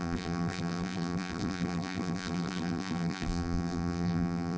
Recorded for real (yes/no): no